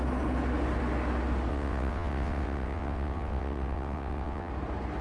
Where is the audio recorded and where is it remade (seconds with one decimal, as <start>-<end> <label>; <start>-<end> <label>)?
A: 0.0-1.5 recorded; 1.5-4.5 remade; 4.5-5.0 recorded